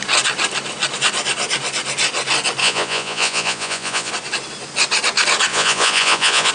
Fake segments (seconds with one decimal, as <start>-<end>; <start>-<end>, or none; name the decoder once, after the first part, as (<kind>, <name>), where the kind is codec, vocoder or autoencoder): 2.6-4.1 (vocoder, Vocos); 5.5-6.5